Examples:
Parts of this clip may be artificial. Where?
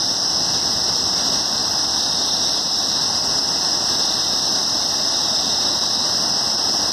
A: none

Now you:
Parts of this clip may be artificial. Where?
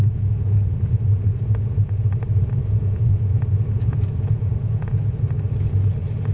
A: 0.0-1.9 (vocoder, Vocos); 2.6-5.1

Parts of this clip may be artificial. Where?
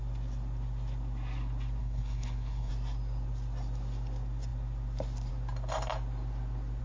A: 1.8-2.7 (codec, HILCodec)